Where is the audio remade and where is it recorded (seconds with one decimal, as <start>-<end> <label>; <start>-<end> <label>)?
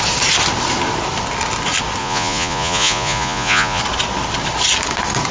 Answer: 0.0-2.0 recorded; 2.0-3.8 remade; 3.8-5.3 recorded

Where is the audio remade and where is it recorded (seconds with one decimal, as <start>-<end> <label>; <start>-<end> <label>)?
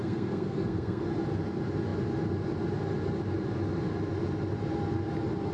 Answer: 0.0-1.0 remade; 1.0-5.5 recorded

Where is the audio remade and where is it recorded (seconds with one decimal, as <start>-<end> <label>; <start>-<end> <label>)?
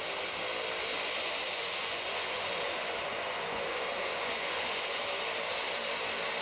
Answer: 0.0-1.2 recorded; 1.2-5.0 remade; 5.0-6.4 recorded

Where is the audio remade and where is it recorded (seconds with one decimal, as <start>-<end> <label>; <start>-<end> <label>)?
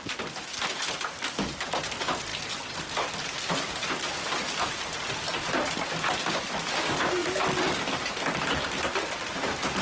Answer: 0.0-9.8 recorded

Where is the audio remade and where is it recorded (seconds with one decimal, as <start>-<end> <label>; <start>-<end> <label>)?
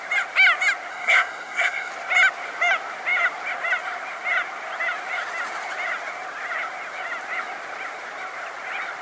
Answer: 0.0-0.9 recorded; 0.9-1.9 remade; 1.9-9.0 recorded